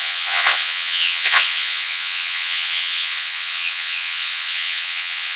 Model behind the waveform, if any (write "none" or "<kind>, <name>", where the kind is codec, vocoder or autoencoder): vocoder, Vocos